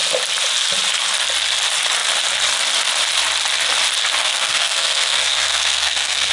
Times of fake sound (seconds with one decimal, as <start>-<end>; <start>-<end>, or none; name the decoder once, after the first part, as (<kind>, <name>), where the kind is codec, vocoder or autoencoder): 4.2-6.3 (codec, SNAC)